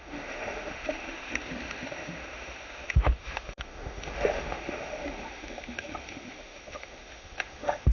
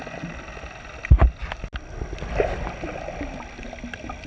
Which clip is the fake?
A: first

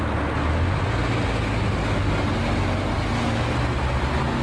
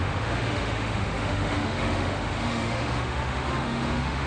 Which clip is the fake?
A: second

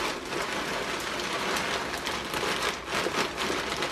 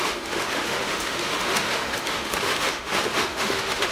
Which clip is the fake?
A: second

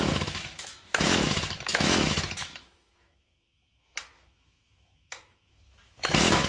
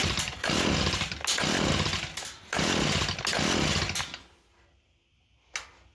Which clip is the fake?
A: first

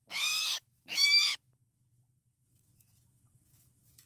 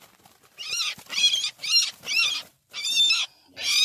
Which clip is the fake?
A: first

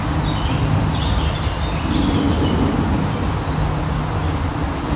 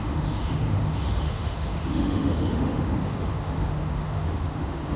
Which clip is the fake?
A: second